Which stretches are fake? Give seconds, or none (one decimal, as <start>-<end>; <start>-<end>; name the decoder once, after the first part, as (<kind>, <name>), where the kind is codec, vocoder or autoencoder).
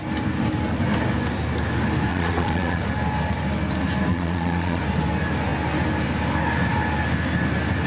2.1-2.8 (vocoder, Vocos); 4.1-4.8